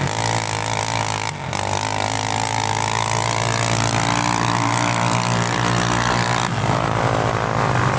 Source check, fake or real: real